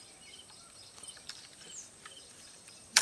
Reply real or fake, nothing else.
fake